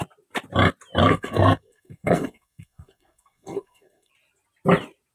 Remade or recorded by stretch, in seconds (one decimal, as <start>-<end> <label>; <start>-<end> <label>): 0.0-1.0 recorded; 1.0-4.1 remade; 4.1-5.1 recorded